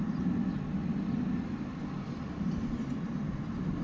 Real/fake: real